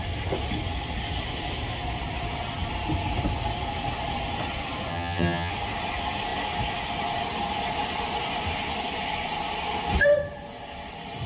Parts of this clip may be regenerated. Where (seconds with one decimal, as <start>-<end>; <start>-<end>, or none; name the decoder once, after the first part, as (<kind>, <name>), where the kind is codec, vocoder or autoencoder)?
4.9-5.5 (vocoder, HiFi-GAN)